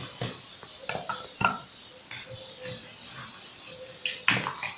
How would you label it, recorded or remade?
recorded